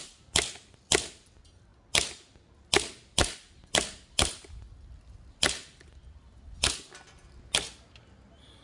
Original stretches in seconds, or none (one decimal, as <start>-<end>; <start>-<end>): 0.0-8.6

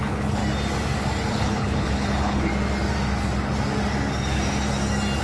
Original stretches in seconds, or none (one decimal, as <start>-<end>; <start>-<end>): 0.4-1.3; 2.5-5.2

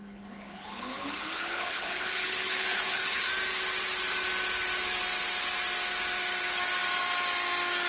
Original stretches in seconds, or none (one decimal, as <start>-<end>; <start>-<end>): 3.3-7.9

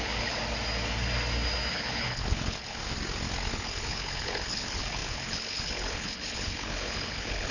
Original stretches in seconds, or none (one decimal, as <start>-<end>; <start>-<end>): 0.4-1.7; 2.8-3.5

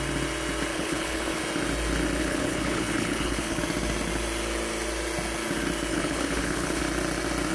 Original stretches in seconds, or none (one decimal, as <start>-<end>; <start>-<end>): 0.0-0.7; 1.4-2.2; 3.6-5.9; 6.8-7.5

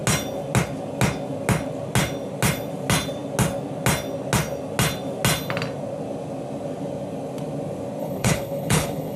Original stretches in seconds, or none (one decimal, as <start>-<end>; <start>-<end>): 0.0-8.0